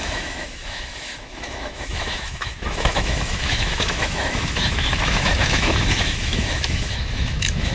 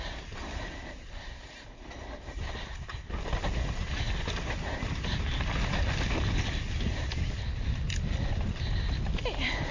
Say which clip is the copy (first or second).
first